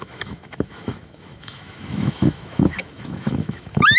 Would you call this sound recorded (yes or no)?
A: no